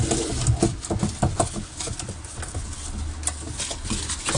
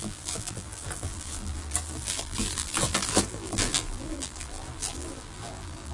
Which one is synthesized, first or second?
second